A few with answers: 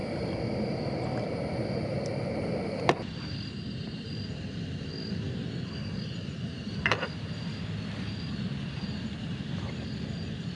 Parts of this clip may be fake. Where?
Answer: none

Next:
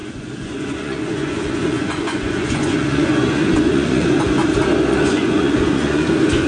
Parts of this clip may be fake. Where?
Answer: 0.0-4.4 (vocoder, Vocos); 4.9-6.5

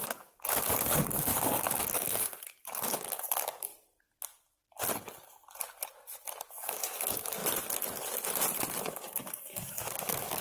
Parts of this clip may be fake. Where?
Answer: 0.0-3.7 (codec, DAC); 6.5-7.4; 8.8-10.4

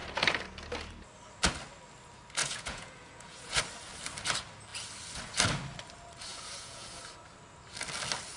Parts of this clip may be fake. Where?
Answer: 2.4-3.6 (vocoder, Vocos); 6.3-7.0

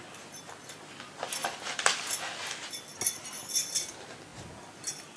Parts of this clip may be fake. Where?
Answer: 1.4-2.1 (vocoder, BigVGAN v2)

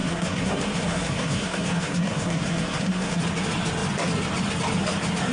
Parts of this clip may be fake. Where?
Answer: 0.0-3.2 (codec, SNAC)